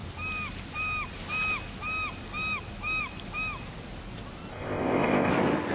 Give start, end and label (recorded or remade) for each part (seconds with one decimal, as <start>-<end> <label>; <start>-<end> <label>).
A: 0.0-4.5 recorded; 4.5-5.3 remade; 5.3-5.7 recorded